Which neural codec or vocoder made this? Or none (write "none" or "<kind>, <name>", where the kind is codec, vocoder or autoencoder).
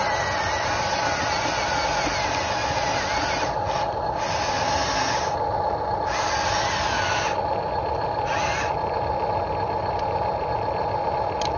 none